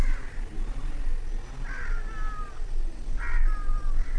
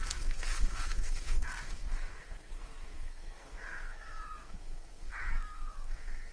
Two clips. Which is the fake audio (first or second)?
second